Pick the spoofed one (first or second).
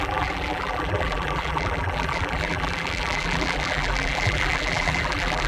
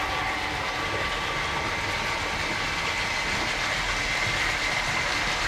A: first